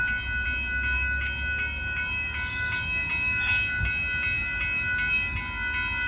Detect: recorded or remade recorded